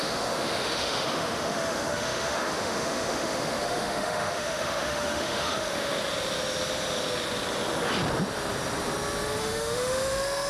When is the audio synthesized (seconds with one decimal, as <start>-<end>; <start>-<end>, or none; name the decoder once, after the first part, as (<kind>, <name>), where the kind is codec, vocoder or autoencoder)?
0.0-5.9 (autoencoder, DAC-VAE); 9.4-10.5